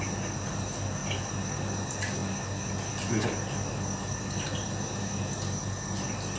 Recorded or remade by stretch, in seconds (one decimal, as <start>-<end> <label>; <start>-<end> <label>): 0.0-6.4 recorded